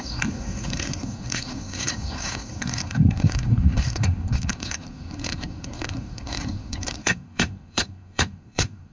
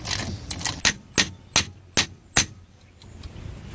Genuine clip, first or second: second